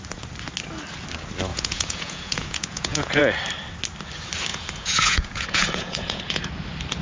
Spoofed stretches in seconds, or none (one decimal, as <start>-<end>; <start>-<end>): 1.5-3.2; 4.5-6.4